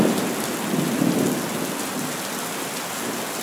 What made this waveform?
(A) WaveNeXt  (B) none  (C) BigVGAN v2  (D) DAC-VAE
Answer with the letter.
B